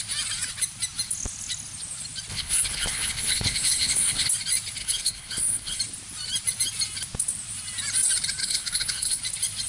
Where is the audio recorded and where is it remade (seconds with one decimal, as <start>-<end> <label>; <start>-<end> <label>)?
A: 0.0-2.3 recorded; 2.3-4.3 remade; 4.3-4.8 recorded; 4.8-5.8 remade; 5.8-8.4 recorded; 8.4-9.2 remade; 9.2-9.7 recorded